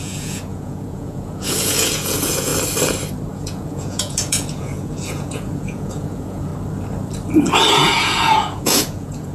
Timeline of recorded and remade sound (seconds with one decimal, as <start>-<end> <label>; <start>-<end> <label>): 0.0-2.5 remade; 2.5-3.3 recorded; 3.3-6.5 remade; 6.5-7.7 recorded; 7.7-9.3 remade